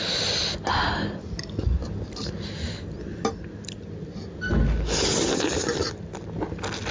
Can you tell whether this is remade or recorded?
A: recorded